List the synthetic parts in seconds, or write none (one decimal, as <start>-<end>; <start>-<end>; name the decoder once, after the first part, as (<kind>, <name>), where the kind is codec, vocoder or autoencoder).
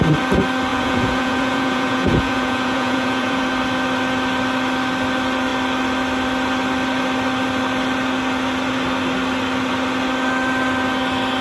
0.7-3.4 (vocoder, Vocos)